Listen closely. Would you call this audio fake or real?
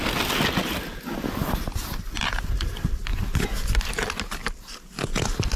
real